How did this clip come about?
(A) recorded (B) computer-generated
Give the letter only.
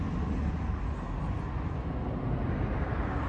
A